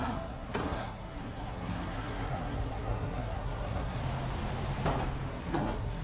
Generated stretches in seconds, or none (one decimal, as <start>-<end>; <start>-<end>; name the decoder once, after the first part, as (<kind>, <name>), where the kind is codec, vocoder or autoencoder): 0.0-4.0 (codec, SNAC); 5.3-6.0